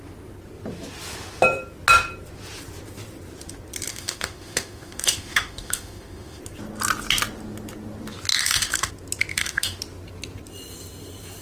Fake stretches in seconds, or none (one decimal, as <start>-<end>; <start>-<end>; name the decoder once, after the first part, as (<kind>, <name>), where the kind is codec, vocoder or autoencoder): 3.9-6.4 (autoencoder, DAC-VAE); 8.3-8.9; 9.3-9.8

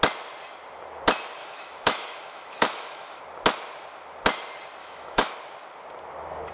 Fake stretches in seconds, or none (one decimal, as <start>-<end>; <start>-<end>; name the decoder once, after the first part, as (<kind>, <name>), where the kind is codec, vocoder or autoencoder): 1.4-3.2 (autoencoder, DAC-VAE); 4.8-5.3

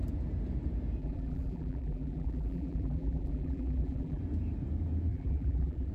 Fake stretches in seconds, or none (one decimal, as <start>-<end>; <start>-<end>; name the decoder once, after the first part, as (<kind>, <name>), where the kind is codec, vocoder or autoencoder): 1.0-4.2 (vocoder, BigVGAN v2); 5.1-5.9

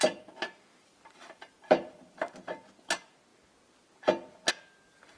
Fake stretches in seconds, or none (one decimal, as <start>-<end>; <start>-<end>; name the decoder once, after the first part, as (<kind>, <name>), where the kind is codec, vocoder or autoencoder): 0.7-2.2 (vocoder, BigVGAN v2)

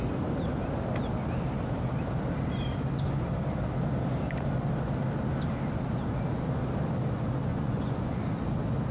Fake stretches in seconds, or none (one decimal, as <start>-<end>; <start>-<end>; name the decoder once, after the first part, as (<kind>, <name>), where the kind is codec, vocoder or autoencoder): 7.5-8.2 (vocoder, Vocos)

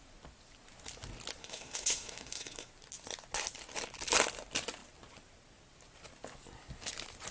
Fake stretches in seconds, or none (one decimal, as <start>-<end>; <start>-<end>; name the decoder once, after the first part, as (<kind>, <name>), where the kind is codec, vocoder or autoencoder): 1.4-2.7 (codec, SNAC)